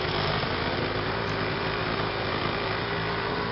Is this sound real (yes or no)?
yes